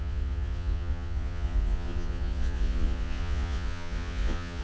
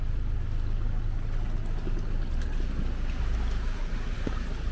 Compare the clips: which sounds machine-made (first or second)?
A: first